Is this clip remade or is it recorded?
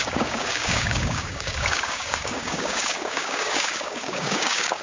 remade